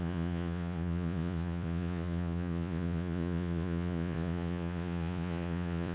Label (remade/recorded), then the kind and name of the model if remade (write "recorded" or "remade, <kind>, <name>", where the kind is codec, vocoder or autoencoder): remade, vocoder, Vocos